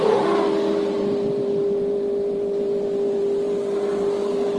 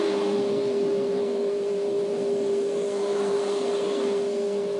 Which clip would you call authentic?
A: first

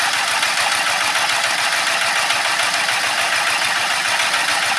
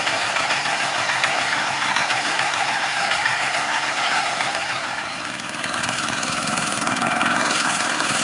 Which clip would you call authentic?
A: first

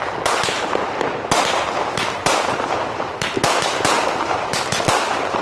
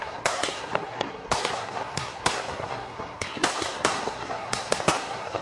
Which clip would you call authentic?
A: first